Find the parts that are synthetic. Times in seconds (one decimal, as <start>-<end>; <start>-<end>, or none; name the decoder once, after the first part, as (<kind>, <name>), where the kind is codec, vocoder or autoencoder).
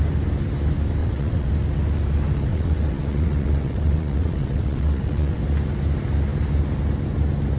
1.0-1.5 (vocoder, WaveNeXt); 2.5-5.4